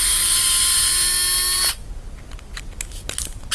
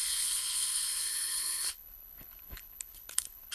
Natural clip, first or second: first